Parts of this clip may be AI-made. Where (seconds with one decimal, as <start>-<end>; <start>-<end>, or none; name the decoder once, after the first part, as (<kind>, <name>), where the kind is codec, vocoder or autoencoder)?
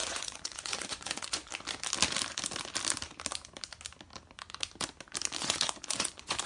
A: 0.0-1.5 (vocoder, Vocos); 5.4-6.5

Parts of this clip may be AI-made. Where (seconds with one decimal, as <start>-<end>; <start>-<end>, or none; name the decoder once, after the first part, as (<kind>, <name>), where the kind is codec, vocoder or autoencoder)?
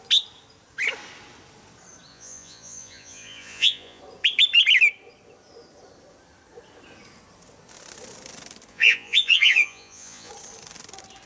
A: 2.1-4.0 (vocoder, Vocos); 8.7-10.3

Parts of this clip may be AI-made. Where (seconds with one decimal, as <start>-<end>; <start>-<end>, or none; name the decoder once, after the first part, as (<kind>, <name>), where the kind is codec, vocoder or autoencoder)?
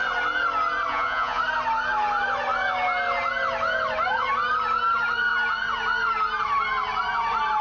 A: 0.9-1.4 (vocoder, Vocos)